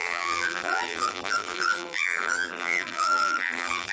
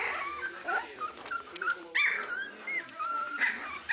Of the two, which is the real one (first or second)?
second